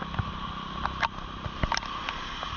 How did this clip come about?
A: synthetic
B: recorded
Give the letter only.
B